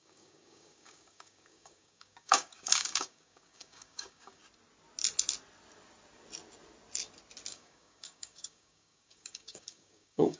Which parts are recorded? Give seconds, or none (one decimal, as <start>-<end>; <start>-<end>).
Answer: 4.4-7.5

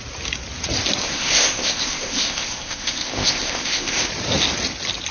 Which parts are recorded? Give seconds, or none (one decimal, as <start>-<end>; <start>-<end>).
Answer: 0.0-1.0; 4.1-5.1